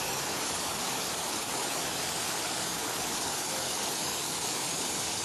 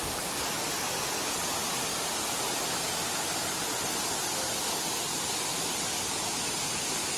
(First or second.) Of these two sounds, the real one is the second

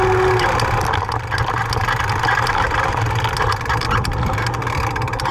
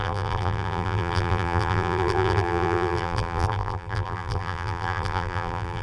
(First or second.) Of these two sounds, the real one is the first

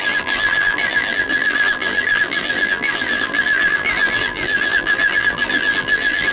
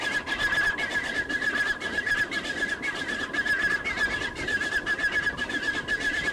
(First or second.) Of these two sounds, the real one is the second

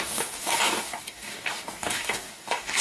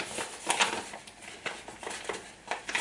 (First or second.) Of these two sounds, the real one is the second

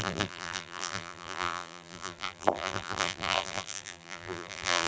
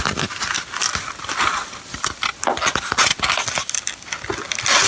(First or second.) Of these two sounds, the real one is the second